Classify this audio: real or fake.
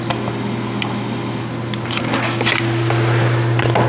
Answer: real